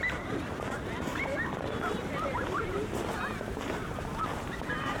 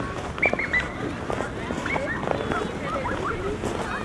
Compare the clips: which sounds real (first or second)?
second